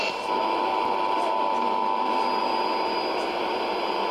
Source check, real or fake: real